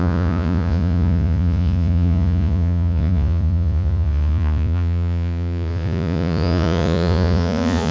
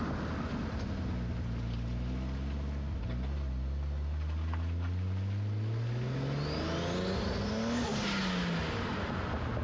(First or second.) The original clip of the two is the second